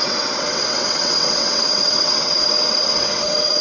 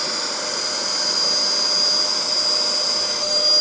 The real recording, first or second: second